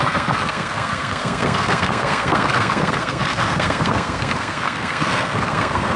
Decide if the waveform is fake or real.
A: fake